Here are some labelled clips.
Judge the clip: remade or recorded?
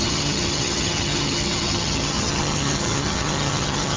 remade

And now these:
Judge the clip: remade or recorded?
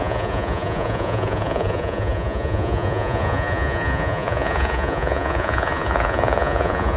remade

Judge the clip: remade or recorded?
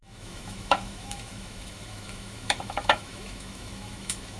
remade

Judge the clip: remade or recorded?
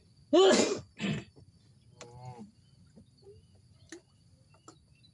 recorded